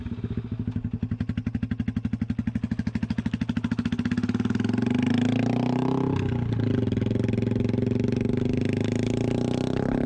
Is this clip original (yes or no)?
yes